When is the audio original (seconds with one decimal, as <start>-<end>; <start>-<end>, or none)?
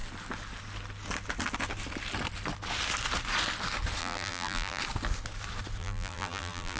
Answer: 0.0-4.0; 4.8-5.8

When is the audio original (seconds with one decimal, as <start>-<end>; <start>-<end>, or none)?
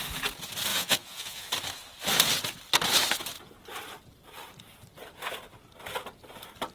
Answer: 0.0-0.7; 1.5-6.7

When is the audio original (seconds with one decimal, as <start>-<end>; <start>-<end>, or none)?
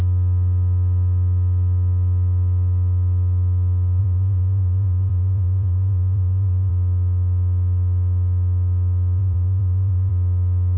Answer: 0.0-4.0; 6.7-9.2; 10.1-10.8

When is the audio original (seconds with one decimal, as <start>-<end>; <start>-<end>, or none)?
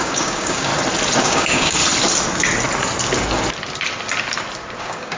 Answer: 0.7-1.2; 1.8-4.8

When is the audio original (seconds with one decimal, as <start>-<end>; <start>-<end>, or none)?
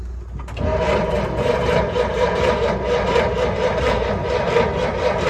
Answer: 0.0-0.7; 3.9-5.3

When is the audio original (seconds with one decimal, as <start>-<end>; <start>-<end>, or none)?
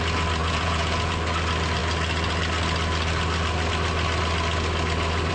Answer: 0.0-0.4; 1.1-5.3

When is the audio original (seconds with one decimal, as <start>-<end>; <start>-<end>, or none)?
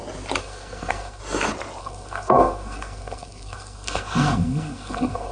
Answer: 0.0-0.4; 1.2-1.8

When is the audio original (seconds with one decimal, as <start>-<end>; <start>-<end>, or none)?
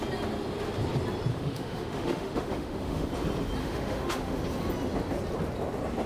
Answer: 0.0-1.3; 3.1-3.6; 4.4-6.1